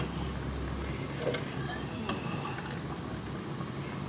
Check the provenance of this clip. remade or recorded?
recorded